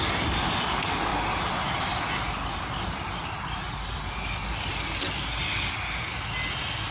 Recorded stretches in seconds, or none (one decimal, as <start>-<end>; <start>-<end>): 0.0-6.9